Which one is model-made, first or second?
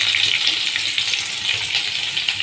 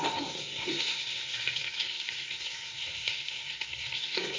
second